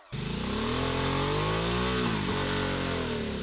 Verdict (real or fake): real